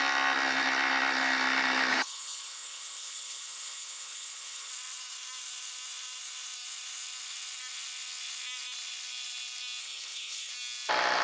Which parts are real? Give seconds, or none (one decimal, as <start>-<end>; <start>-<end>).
0.0-1.9; 4.7-9.8; 10.5-11.2